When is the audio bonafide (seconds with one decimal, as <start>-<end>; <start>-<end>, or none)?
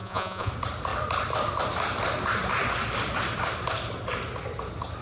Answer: 0.5-5.0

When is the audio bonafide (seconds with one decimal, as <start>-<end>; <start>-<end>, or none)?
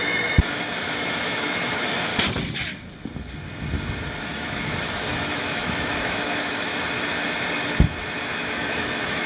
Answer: 2.1-4.2; 6.7-8.2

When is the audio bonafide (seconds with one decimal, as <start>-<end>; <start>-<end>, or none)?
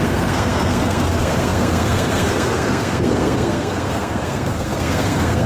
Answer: none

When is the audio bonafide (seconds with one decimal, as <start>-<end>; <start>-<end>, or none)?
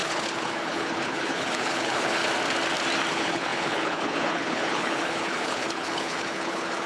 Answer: 2.2-3.1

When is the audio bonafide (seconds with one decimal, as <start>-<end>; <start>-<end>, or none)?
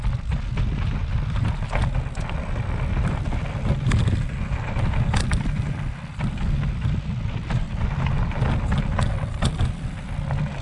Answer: 0.0-10.6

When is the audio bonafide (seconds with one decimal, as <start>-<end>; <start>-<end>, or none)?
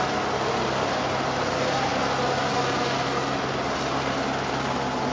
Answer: 0.0-5.1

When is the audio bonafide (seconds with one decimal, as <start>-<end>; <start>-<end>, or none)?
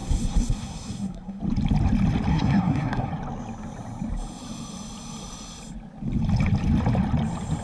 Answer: 1.4-2.3; 3.1-7.6